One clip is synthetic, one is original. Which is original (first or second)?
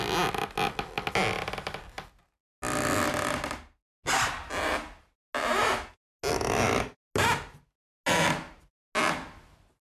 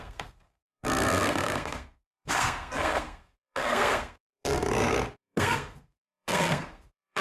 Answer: first